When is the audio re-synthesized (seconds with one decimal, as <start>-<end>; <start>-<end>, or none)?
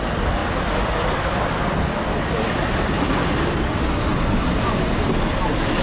none